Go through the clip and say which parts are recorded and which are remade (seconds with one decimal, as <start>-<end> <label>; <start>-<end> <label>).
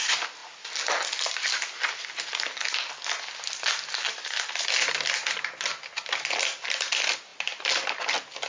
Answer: 0.0-8.5 recorded